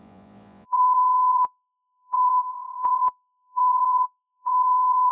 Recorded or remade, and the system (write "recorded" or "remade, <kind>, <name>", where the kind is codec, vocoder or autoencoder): remade, vocoder, Vocos